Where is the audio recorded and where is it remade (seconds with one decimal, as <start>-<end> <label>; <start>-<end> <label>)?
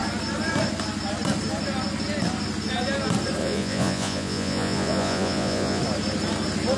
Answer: 0.0-3.4 recorded; 3.4-5.8 remade; 5.8-6.8 recorded